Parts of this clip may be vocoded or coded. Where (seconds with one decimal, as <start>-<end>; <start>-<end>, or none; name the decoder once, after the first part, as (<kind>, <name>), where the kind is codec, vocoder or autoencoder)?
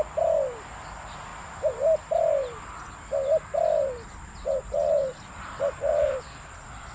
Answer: none